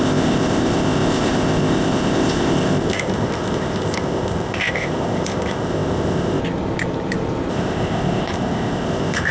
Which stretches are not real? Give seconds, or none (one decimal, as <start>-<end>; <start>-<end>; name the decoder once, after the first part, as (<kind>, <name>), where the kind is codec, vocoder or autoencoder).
0.0-6.4 (codec, ZipCodec); 7.5-9.3